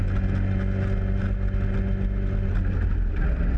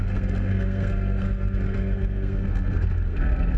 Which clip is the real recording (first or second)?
first